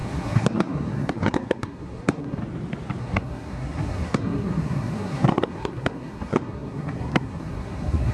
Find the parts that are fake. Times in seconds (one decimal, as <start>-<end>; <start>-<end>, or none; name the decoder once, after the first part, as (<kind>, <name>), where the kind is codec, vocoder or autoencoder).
0.0-2.4 (codec, SNAC); 3.0-8.1